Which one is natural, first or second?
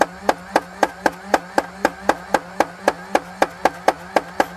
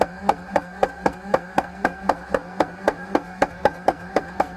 first